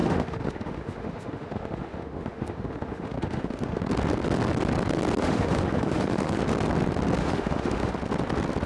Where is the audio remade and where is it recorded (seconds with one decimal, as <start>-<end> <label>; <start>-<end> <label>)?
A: 0.0-3.8 remade; 3.8-5.2 recorded; 5.2-6.4 remade; 6.4-7.2 recorded; 7.2-7.9 remade; 7.9-8.7 recorded